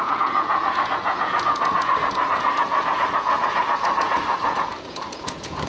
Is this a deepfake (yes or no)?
yes